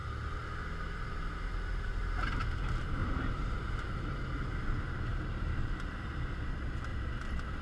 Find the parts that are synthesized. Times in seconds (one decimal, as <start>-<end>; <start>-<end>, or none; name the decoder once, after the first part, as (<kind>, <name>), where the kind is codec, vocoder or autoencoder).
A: 3.0-3.9 (vocoder, BigVGAN v2); 6.9-7.6